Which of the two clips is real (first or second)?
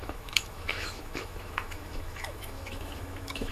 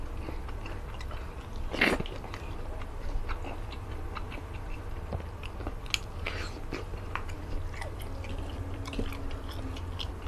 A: second